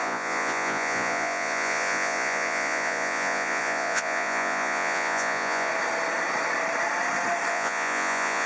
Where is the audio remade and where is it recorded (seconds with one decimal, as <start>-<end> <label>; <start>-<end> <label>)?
0.0-5.7 remade; 5.7-7.5 recorded; 7.5-8.5 remade